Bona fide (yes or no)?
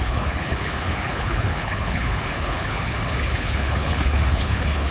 no